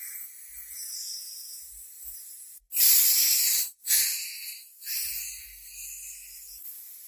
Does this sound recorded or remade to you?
recorded